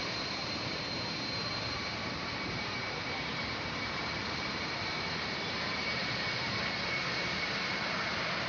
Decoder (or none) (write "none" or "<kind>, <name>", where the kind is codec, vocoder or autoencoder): vocoder, BigVGAN v2